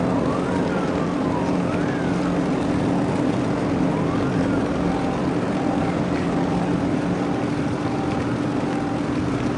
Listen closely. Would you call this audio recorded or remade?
recorded